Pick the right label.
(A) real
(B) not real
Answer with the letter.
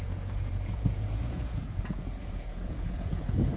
B